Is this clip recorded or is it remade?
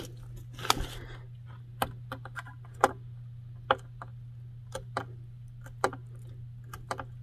recorded